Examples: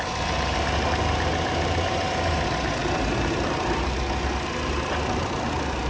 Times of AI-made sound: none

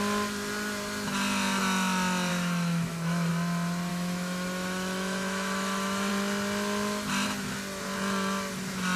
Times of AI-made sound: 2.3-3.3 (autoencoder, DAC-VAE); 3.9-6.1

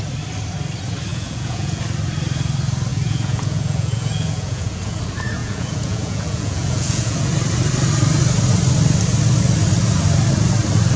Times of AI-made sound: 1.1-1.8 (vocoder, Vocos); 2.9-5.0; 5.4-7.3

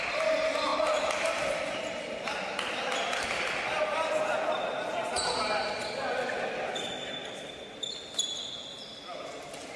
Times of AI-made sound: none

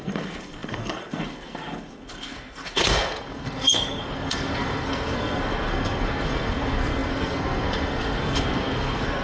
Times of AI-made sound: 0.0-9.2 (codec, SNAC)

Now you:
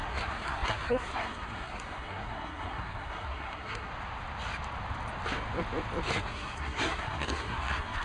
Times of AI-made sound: 0.0-3.9 (codec, SNAC); 6.1-8.0